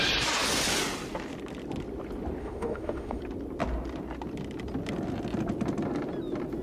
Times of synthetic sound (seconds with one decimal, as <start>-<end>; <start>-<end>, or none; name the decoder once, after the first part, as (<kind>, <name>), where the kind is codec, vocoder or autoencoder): 2.4-3.2 (autoencoder, DAC-VAE)